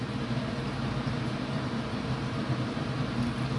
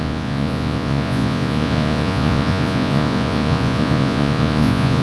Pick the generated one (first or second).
second